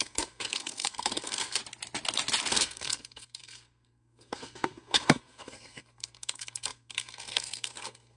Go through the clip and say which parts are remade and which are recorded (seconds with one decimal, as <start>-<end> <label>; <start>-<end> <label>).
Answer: 0.0-1.6 remade; 1.6-2.5 recorded; 2.5-8.2 remade

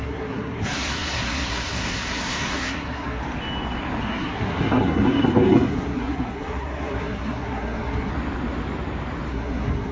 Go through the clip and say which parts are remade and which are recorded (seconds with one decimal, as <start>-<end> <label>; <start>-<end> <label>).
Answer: 0.0-3.2 remade; 3.2-4.0 recorded; 4.0-8.1 remade; 8.1-9.3 recorded; 9.3-9.9 remade

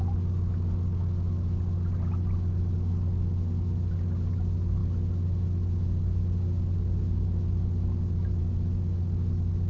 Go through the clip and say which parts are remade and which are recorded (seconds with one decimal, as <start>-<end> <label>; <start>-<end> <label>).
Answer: 0.0-9.7 recorded

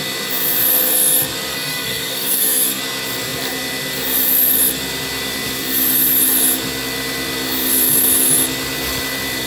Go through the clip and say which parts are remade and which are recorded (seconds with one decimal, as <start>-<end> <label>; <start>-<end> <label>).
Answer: 0.0-1.5 recorded; 1.5-2.8 remade; 2.8-9.5 recorded

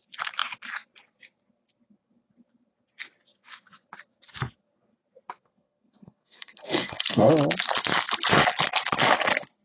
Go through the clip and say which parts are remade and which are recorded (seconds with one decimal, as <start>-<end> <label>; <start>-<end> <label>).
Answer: 0.0-5.4 recorded; 5.4-7.3 remade; 7.3-9.6 recorded

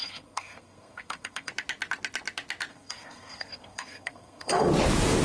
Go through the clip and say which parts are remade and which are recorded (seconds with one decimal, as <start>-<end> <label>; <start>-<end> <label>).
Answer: 0.0-1.5 remade; 1.5-2.7 recorded; 2.7-4.6 remade; 4.6-5.2 recorded

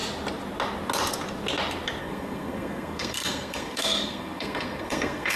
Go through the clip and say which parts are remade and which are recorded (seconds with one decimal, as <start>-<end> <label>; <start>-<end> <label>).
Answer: 0.0-2.0 recorded; 2.0-5.4 remade